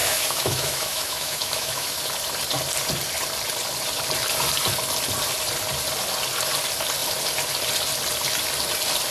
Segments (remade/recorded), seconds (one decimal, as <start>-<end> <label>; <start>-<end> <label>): 0.0-2.0 remade; 2.0-9.1 recorded